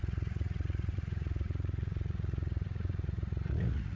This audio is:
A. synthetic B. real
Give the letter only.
A